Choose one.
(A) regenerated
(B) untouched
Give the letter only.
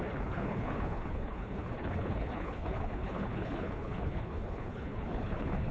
A